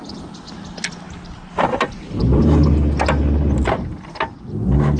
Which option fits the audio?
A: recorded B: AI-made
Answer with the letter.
A